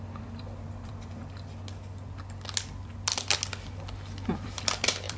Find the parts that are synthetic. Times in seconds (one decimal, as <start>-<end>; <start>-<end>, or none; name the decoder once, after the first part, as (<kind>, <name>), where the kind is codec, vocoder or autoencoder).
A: 0.0-1.2 (vocoder, BigVGAN v2); 4.3-5.2